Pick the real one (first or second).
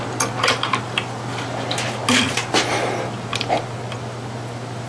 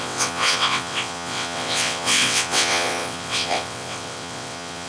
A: first